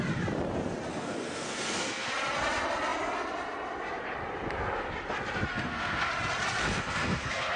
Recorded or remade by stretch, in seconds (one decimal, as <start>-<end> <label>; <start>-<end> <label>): 0.0-0.9 recorded; 0.9-2.1 remade; 2.1-5.5 recorded; 5.5-6.1 remade; 6.1-6.6 recorded; 6.6-7.6 remade